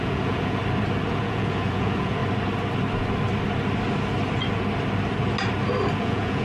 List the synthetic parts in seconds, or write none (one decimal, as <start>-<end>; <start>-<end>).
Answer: 0.0-0.6; 1.1-2.2; 6.0-6.4